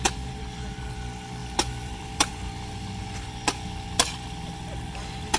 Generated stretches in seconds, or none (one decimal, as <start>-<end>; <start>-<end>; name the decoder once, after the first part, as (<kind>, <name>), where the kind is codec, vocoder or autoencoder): 1.4-2.3 (vocoder, BigVGAN v2)